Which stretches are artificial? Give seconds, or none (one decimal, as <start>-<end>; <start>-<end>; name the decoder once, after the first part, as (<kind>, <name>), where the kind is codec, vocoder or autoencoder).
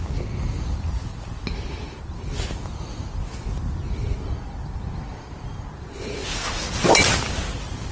none